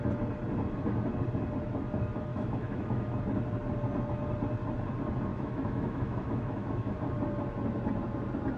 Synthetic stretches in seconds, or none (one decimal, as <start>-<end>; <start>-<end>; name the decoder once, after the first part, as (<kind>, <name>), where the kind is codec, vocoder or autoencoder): 2.3-3.2 (autoencoder, DAC-VAE); 5.3-6.9